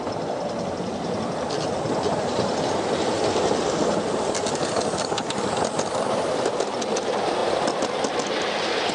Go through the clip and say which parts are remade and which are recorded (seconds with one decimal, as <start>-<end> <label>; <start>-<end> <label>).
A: 0.0-8.9 recorded